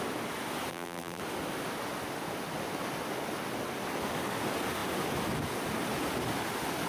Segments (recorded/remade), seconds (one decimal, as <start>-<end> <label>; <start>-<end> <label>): 0.0-0.7 recorded; 0.7-1.2 remade; 1.2-6.9 recorded